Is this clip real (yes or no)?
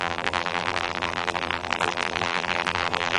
no